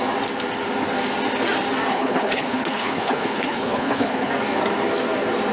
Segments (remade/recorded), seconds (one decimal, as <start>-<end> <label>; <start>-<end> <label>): 0.0-1.9 recorded; 1.9-4.3 remade; 4.3-5.5 recorded